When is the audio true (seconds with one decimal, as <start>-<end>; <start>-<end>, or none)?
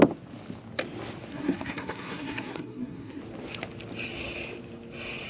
0.0-1.3; 3.2-5.3